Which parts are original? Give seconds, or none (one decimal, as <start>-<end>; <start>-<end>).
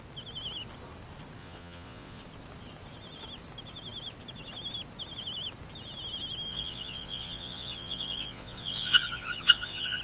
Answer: 0.0-1.4; 2.2-6.5